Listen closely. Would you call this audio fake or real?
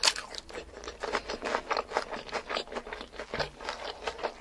real